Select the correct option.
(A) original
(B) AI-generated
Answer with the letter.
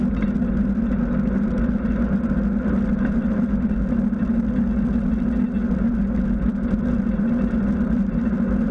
A